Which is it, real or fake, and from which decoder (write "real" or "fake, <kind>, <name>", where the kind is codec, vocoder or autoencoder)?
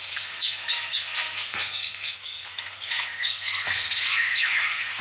fake, codec, SNAC